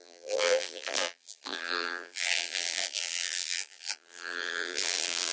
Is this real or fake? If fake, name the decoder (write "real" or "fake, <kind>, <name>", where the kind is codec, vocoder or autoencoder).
fake, vocoder, BigVGAN v2